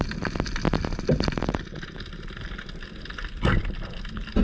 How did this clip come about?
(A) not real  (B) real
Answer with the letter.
B